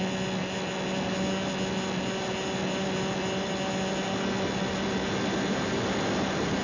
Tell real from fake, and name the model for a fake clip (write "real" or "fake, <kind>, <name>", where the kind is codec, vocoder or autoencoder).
real